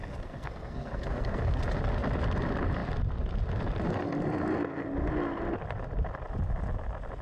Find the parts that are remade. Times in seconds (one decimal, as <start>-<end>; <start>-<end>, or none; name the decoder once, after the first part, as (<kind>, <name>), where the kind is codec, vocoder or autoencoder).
0.0-1.6 (codec, SNAC)